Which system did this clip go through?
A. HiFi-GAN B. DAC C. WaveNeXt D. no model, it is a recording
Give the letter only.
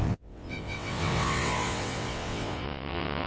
C